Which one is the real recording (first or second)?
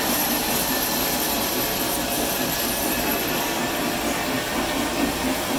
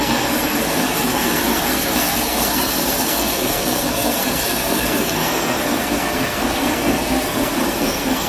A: first